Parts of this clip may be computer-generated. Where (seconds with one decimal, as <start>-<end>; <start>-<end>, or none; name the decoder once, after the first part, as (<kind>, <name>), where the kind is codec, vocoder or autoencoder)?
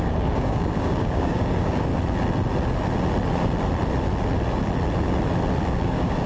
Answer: 0.0-1.9 (codec, DAC); 5.7-6.3